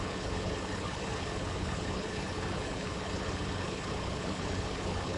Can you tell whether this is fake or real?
fake